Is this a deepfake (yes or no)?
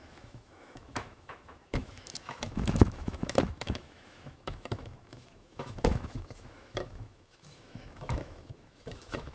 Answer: yes